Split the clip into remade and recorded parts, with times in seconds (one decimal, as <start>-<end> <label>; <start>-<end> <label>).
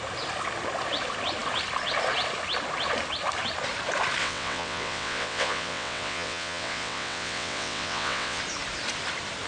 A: 0.0-4.2 recorded; 4.2-8.4 remade; 8.4-9.5 recorded